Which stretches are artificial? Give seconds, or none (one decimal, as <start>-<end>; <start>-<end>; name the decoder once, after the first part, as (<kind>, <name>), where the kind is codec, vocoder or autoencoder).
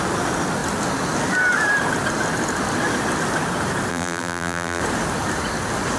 3.9-4.8 (vocoder, BigVGAN v2)